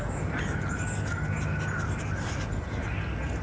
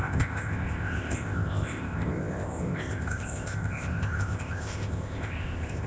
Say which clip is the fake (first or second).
second